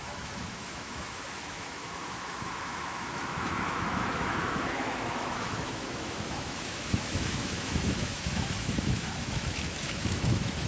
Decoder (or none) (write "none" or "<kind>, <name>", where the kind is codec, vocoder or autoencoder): autoencoder, DAC-VAE